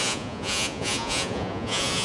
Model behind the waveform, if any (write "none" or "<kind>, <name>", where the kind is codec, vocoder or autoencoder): vocoder, Vocos